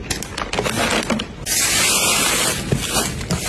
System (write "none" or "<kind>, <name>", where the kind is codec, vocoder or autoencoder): none